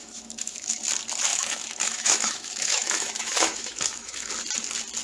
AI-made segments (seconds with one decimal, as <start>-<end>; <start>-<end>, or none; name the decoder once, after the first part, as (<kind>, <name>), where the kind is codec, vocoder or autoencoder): 0.0-0.8 (autoencoder, DAC-VAE); 1.3-4.3